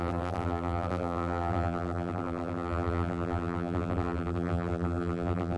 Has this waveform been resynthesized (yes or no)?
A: yes